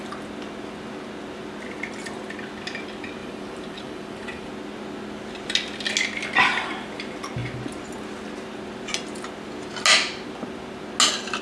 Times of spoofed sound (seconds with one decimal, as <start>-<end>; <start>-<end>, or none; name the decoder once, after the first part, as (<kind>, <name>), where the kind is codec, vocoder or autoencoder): 3.2-4.5 (vocoder, BigVGAN v2)